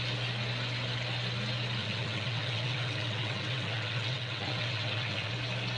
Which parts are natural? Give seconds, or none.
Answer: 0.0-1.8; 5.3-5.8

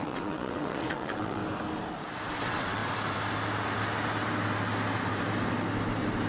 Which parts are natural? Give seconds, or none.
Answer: 1.4-2.4; 2.8-6.3